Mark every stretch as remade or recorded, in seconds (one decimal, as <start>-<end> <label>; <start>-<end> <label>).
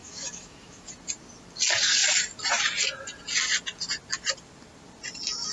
0.0-0.9 remade; 0.9-5.5 recorded